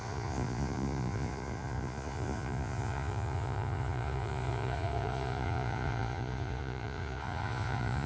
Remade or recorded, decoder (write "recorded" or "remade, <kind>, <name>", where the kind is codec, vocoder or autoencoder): remade, vocoder, Vocos